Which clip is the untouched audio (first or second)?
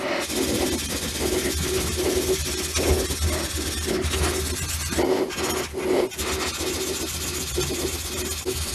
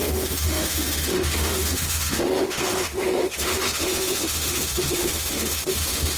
first